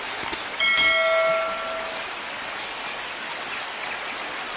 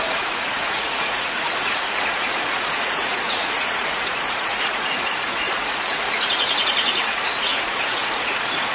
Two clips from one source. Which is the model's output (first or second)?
second